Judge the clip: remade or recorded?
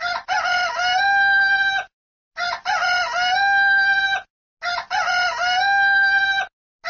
recorded